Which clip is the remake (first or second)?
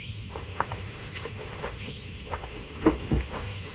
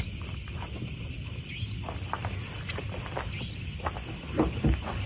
first